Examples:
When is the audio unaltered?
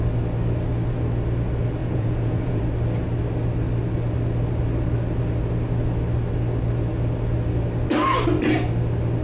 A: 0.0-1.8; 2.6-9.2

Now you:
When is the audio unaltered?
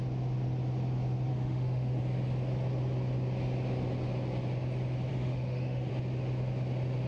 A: 0.0-1.3; 2.0-5.1; 5.9-7.1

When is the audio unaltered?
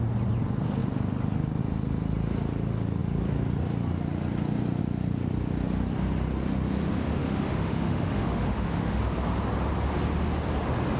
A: 0.0-7.2; 9.0-11.0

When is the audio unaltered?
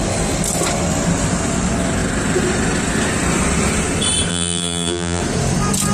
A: 0.0-4.3; 5.2-5.9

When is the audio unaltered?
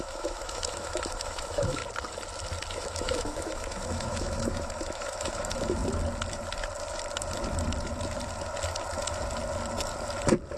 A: 1.8-2.7; 5.8-10.6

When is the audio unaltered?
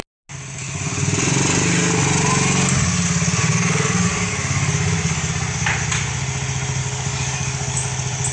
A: 0.0-3.5; 5.3-6.8; 7.8-8.3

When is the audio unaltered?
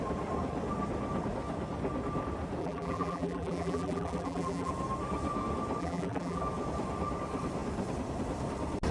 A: 0.0-2.6; 4.7-5.8; 6.4-8.9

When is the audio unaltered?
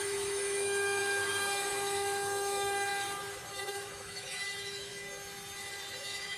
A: 2.9-3.5; 4.9-6.0